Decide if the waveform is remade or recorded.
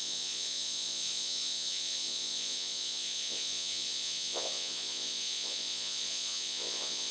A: remade